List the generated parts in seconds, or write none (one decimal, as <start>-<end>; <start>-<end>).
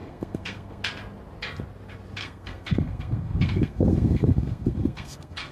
0.0-0.8; 2.2-5.5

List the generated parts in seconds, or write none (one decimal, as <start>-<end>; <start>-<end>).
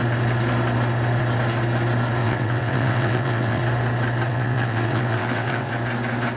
2.2-3.6; 4.3-5.7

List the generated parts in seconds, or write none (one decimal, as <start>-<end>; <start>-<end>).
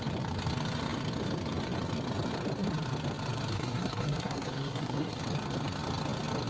3.5-5.2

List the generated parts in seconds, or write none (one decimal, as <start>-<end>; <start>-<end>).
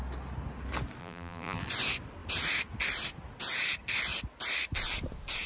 1.0-1.6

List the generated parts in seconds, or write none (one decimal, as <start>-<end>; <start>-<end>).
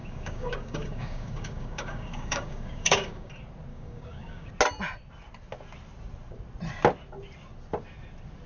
0.0-3.3; 3.7-4.5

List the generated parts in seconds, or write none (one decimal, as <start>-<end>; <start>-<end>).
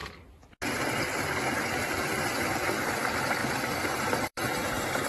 1.8-2.7; 3.4-4.5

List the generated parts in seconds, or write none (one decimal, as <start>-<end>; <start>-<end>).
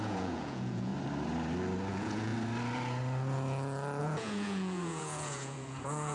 0.0-0.9; 1.9-2.3; 4.0-6.1